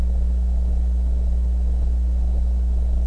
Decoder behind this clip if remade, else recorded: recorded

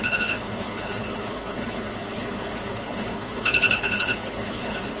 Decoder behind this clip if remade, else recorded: remade, codec, HILCodec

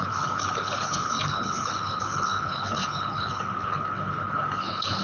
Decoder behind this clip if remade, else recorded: remade, codec, HILCodec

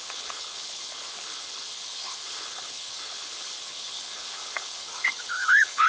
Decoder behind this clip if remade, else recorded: remade, codec, HILCodec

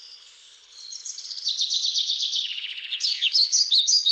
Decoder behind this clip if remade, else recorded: remade, codec, HILCodec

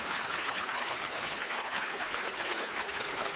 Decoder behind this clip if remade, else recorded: remade, codec, HILCodec